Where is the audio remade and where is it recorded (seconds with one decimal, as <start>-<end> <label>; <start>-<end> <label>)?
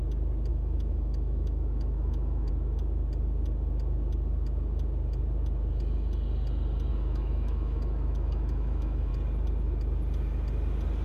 0.0-0.5 recorded; 0.5-2.5 remade; 2.5-6.9 recorded; 6.9-9.1 remade; 9.1-11.0 recorded